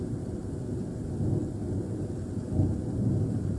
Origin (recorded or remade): recorded